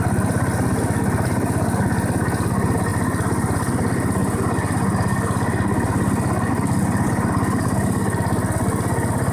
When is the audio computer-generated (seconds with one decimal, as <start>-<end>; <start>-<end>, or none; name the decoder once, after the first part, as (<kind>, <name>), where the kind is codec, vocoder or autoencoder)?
none